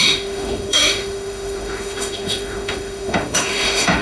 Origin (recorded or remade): remade